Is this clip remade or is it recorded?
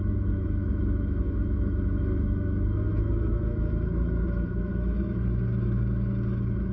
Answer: remade